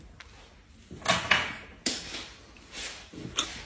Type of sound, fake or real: real